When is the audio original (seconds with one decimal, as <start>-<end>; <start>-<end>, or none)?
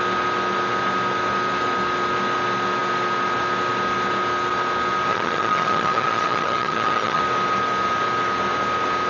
0.0-5.1; 7.2-9.1